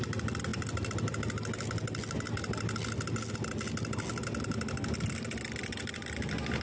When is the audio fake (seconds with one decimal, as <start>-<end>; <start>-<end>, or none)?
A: none

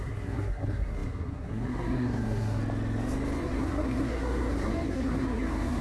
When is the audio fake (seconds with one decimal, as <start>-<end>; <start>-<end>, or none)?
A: 0.0-2.6; 3.4-5.8

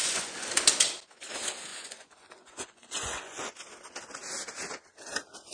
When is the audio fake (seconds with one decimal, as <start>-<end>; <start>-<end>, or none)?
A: 0.0-0.5; 1.7-3.5

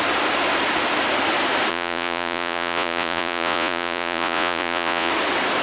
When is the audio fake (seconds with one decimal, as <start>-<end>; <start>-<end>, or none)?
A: 1.7-5.1

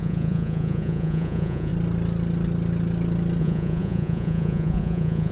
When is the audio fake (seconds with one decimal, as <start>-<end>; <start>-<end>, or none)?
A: 0.0-1.7; 3.4-5.3